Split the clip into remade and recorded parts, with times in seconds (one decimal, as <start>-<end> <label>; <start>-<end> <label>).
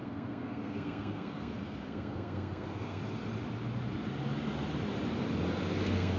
0.0-3.0 remade; 3.0-5.8 recorded; 5.8-6.2 remade